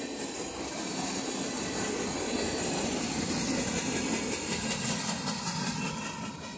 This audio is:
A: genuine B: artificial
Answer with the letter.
A